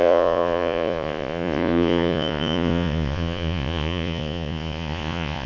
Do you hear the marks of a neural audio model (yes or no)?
yes